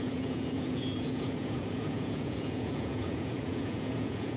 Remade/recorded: remade